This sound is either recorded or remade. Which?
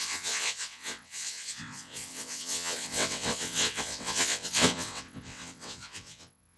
remade